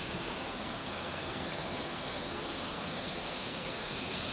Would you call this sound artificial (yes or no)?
yes